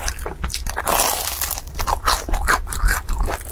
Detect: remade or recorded recorded